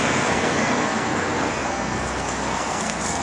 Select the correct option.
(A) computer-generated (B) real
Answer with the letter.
A